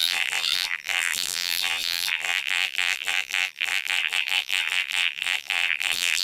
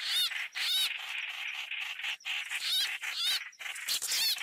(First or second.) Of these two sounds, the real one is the second